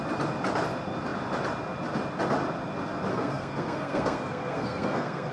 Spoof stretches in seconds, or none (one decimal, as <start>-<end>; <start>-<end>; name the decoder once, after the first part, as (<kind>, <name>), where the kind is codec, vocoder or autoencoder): 3.1-5.3 (codec, SNAC)